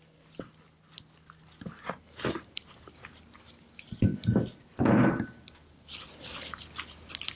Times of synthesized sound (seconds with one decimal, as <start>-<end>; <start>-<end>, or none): none